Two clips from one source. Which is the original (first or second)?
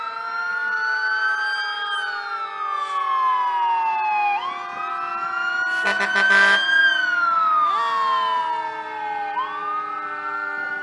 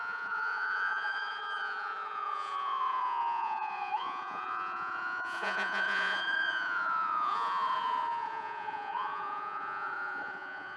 first